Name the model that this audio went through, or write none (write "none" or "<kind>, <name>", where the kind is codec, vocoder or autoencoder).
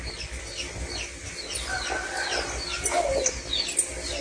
none